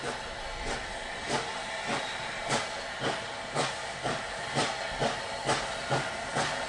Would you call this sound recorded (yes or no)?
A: yes